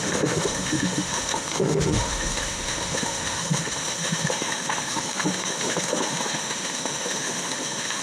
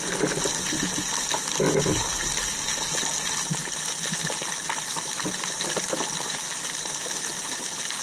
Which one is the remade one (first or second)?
first